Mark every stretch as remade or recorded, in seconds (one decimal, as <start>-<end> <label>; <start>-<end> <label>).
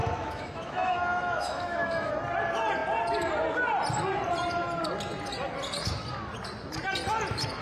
0.0-2.1 remade; 2.1-7.6 recorded